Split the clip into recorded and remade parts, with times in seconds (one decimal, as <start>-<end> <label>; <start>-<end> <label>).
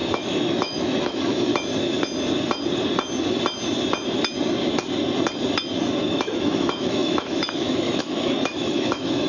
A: 0.0-1.5 remade; 1.5-6.1 recorded; 6.1-9.3 remade